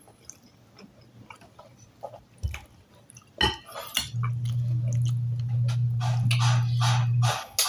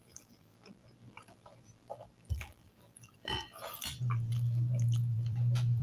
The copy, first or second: second